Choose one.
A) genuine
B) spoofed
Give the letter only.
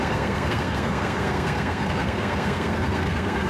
B